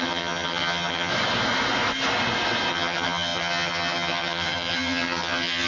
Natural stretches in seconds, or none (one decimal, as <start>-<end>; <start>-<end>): 1.1-2.7

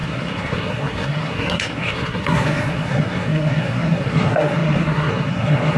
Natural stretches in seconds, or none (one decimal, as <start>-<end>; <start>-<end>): none

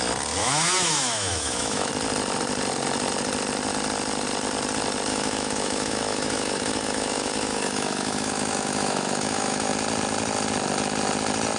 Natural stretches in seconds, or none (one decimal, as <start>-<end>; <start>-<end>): 0.0-0.4; 1.9-5.1; 9.7-11.6

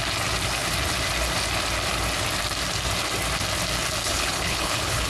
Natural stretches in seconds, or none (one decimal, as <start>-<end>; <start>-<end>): 0.0-4.0

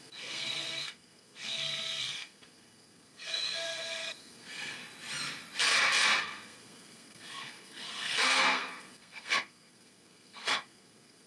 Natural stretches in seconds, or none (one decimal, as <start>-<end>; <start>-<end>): 4.8-6.2